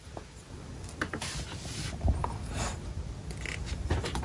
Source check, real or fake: real